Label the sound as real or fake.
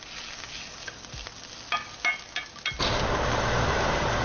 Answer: real